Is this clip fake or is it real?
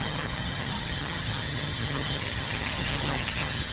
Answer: fake